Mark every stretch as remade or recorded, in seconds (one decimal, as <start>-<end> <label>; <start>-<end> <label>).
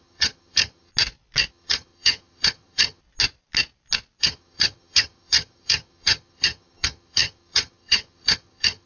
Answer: 0.0-0.9 remade; 0.9-1.5 recorded; 1.5-3.0 remade; 3.0-4.2 recorded; 4.2-8.9 remade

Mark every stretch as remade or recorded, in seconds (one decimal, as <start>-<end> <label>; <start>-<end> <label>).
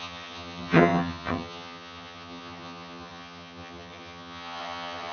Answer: 0.0-5.1 remade